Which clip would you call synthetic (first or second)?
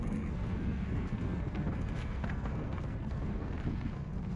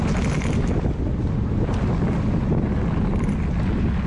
first